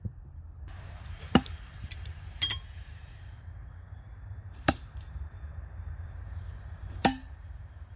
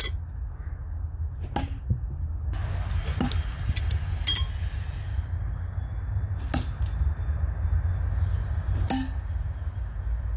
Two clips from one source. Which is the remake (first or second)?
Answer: first